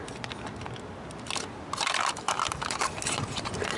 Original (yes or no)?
yes